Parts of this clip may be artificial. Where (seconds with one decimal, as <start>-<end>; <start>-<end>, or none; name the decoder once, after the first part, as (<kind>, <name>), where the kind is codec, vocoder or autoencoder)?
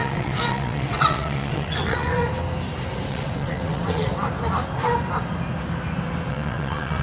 0.0-2.2 (vocoder, WaveNeXt); 3.1-4.1; 6.3-7.0